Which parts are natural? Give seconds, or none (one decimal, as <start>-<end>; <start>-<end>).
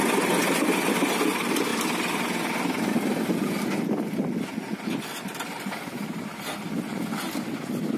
0.0-8.0